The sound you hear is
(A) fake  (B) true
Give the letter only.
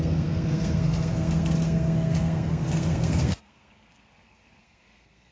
A